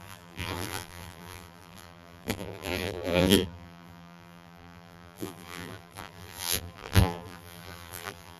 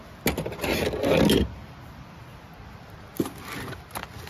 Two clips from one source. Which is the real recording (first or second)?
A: second